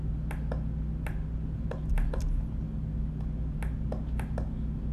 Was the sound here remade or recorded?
recorded